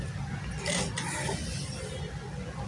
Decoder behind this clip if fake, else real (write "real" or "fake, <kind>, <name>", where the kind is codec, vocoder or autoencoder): real